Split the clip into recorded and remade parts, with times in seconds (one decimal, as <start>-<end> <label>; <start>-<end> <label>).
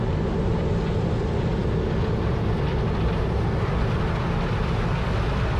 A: 0.0-5.6 recorded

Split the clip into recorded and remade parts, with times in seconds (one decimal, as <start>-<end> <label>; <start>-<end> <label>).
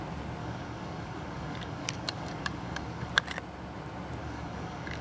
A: 0.0-0.4 recorded; 0.4-3.1 remade; 3.1-4.2 recorded; 4.2-5.0 remade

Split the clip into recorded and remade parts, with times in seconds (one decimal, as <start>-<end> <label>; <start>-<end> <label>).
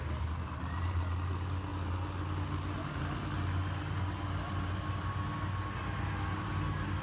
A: 0.0-7.0 recorded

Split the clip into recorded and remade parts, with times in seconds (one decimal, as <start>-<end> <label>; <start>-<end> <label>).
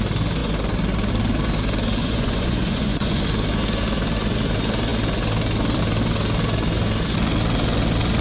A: 0.0-2.0 recorded; 2.0-3.2 remade; 3.2-8.2 recorded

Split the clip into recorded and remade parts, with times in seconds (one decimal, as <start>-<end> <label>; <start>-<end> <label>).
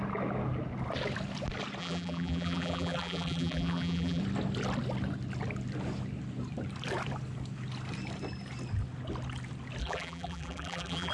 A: 0.0-1.8 recorded; 1.8-4.2 remade; 4.2-9.8 recorded; 9.8-11.1 remade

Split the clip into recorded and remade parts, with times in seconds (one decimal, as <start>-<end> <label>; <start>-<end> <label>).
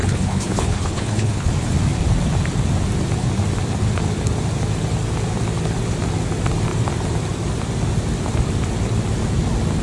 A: 0.0-1.5 remade; 1.5-9.8 recorded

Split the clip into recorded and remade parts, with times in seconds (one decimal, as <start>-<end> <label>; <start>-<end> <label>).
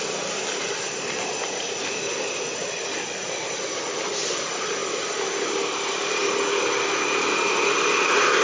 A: 0.0-8.4 recorded